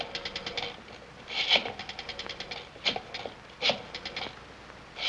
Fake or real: real